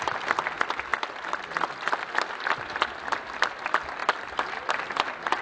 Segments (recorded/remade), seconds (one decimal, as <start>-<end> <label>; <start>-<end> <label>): 0.0-5.4 recorded

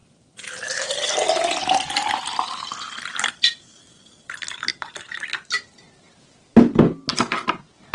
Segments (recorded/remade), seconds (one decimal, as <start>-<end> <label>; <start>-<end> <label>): 0.0-2.8 remade; 2.8-7.1 recorded; 7.1-7.9 remade